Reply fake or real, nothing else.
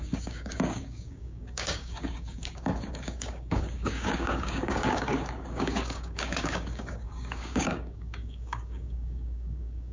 fake